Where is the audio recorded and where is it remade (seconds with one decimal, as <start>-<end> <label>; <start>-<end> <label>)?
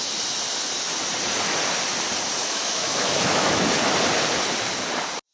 0.0-2.4 recorded; 2.4-3.6 remade; 3.6-5.3 recorded